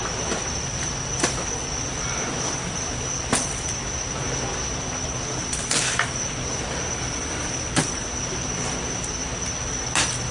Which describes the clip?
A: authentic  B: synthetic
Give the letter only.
A